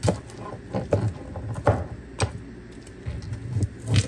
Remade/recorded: recorded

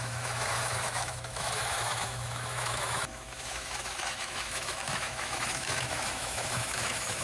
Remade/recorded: remade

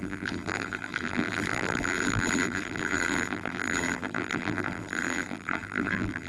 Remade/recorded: remade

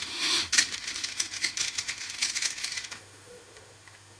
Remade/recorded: remade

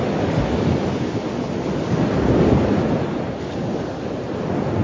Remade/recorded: recorded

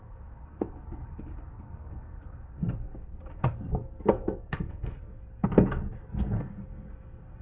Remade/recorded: remade